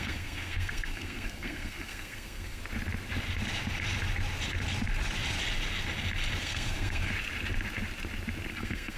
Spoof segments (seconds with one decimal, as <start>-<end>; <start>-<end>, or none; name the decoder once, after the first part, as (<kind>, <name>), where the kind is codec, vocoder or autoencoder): 0.0-2.6 (codec, SNAC); 6.4-7.1; 8.5-9.0